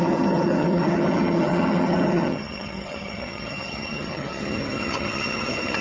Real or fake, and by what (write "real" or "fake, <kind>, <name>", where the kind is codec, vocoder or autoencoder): fake, vocoder, HiFi-GAN